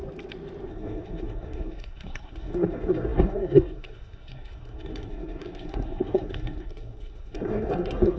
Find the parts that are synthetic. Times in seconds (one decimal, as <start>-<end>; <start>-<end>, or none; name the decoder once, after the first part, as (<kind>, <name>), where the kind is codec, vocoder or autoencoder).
0.7-8.2 (codec, SNAC)